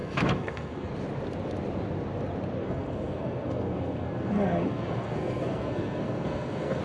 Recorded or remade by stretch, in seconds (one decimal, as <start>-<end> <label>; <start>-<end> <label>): 0.0-0.9 remade; 0.9-2.6 recorded; 2.6-6.8 remade